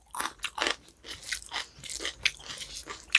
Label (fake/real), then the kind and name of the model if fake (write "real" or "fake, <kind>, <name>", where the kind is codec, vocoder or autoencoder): real